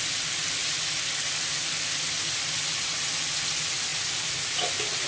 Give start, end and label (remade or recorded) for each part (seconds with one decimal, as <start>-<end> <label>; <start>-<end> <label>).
0.0-5.1 recorded